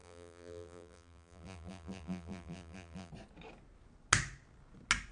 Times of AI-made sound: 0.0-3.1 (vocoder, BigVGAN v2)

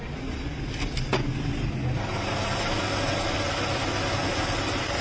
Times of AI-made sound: none

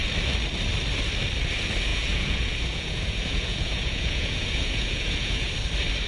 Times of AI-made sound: 1.9-5.5 (vocoder, Vocos)

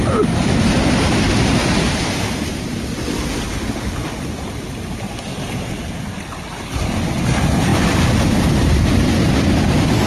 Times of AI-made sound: 0.0-1.0 (vocoder, BigVGAN v2)

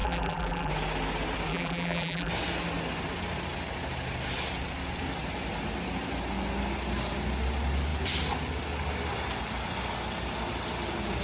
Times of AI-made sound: 0.0-0.7 (vocoder, BigVGAN v2); 1.5-2.3

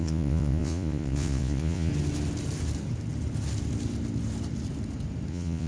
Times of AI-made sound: 0.0-1.9 (vocoder, Vocos); 5.3-5.7

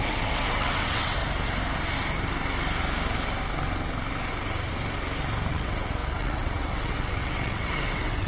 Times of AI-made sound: 0.0-1.2 (vocoder, WaveNeXt); 5.5-8.3

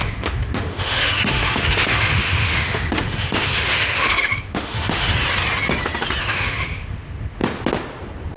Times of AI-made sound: 0.0-5.1 (autoencoder, DAC-VAE); 6.3-7.4